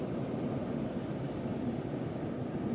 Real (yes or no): yes